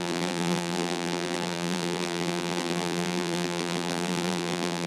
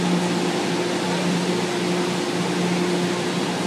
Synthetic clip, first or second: first